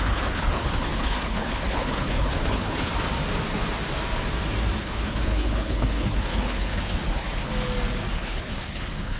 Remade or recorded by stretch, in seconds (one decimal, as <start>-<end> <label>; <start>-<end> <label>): 0.0-2.9 remade; 2.9-4.8 recorded; 4.8-7.5 remade; 7.5-8.1 recorded; 8.1-9.2 remade

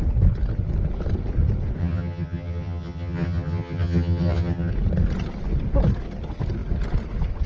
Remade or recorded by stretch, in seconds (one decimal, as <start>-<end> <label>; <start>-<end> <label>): 0.0-1.8 recorded; 1.8-4.7 remade; 4.7-7.5 recorded